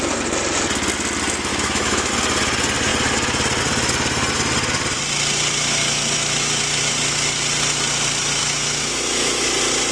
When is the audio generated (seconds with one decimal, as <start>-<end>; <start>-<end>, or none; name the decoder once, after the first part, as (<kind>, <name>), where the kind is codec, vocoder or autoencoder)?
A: 1.5-2.1 (autoencoder, DAC-VAE); 8.4-9.5